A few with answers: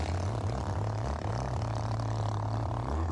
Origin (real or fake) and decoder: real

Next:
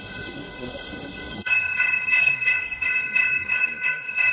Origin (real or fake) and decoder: fake, codec, SNAC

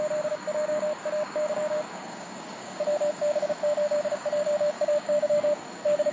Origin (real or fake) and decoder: fake, codec, DAC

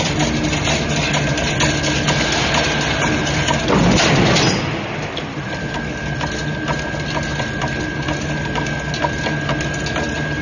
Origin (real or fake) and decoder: real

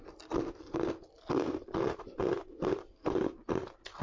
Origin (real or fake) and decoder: real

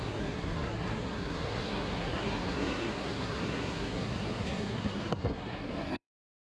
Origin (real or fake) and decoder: fake, codec, SNAC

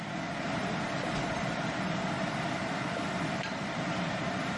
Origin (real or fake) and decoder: fake, vocoder, BigVGAN v2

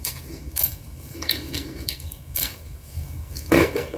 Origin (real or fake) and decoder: fake, codec, SNAC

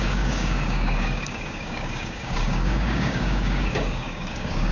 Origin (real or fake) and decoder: fake, codec, DAC